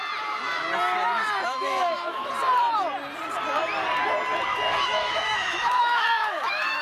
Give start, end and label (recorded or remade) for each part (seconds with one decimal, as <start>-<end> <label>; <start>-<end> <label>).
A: 0.0-1.4 recorded; 1.4-2.3 remade; 2.3-4.5 recorded; 4.5-6.8 remade